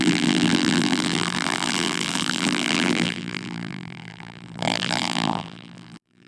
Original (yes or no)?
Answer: no